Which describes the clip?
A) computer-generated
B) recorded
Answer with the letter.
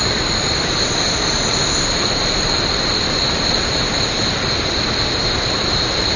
B